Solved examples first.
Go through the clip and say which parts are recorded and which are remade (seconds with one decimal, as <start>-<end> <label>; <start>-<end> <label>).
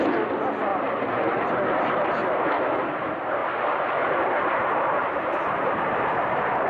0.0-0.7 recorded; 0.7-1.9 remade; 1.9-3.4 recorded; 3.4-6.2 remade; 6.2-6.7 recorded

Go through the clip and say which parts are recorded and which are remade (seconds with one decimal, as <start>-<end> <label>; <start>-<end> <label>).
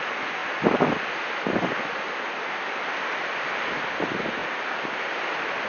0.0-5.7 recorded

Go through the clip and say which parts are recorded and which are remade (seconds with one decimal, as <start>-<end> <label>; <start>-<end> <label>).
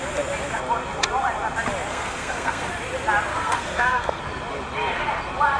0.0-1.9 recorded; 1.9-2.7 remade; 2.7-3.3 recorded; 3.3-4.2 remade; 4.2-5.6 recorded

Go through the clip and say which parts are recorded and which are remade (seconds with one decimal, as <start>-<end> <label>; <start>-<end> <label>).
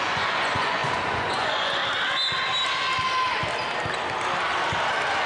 0.0-1.8 remade; 1.8-5.3 recorded